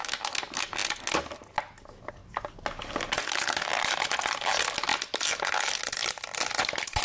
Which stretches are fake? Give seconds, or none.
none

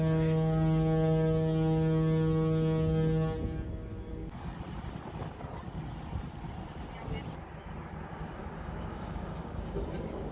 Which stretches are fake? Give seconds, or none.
8.4-10.3

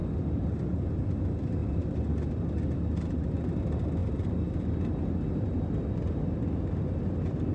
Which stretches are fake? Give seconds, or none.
0.0-1.1

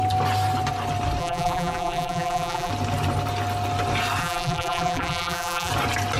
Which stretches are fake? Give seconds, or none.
1.2-2.7; 4.2-5.7

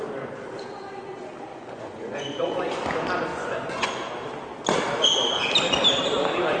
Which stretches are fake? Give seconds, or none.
1.5-2.8; 3.3-4.1

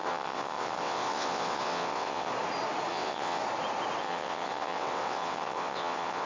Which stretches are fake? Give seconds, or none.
0.0-2.3; 2.9-3.4; 4.0-6.3

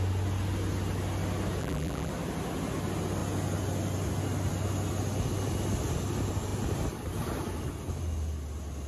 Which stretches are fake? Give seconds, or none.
1.6-2.1